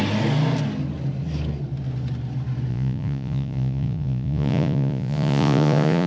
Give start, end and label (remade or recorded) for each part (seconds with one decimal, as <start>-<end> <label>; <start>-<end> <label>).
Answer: 0.0-2.7 recorded; 2.7-6.1 remade

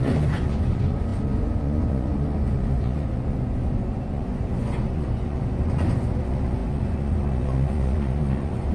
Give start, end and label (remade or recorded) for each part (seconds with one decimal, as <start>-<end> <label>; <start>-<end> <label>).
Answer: 0.0-8.7 remade